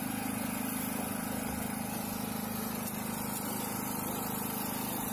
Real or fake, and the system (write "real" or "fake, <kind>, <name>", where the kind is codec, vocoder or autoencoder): real